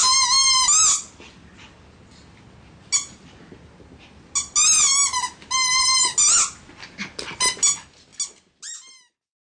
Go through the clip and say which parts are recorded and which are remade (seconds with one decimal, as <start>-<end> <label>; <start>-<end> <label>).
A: 0.0-9.5 recorded